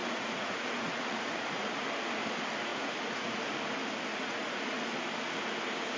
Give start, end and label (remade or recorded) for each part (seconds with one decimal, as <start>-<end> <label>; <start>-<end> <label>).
0.0-1.8 remade; 1.8-2.7 recorded; 2.7-3.4 remade; 3.4-4.1 recorded; 4.1-4.6 remade; 4.6-6.0 recorded